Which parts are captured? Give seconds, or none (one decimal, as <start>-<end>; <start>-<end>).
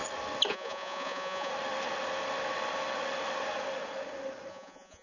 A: 0.0-0.5; 1.5-4.5